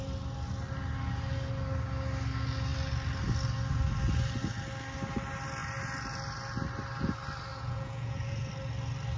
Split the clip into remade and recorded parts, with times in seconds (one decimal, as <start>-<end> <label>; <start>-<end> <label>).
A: 0.0-7.5 recorded; 7.5-8.5 remade; 8.5-9.2 recorded